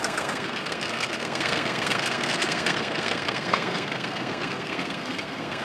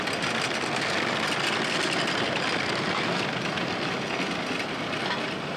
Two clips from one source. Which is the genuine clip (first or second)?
second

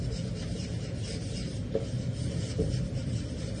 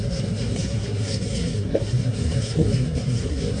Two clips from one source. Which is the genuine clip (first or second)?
first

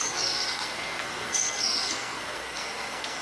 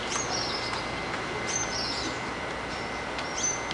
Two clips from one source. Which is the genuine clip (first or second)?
second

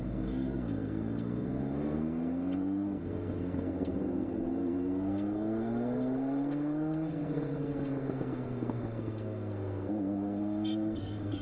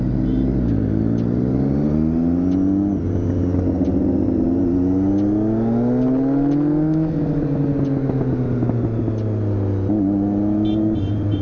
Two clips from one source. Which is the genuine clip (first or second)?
second